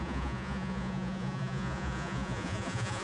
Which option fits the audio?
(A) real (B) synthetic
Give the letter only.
B